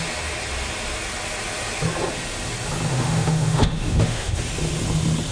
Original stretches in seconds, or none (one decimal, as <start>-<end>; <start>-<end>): 0.0-2.9; 4.4-5.3